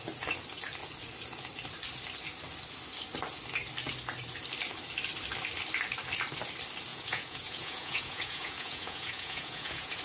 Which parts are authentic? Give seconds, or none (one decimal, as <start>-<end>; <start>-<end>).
0.0-6.9